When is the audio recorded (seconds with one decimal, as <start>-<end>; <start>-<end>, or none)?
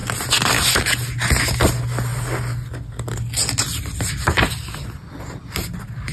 0.0-6.1